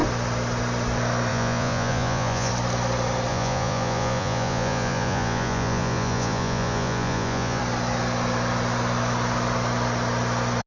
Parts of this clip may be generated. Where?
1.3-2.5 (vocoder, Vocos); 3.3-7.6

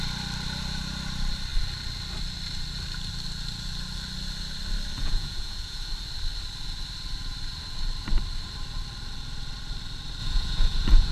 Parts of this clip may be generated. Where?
5.0-5.9 (vocoder, Vocos); 10.2-11.1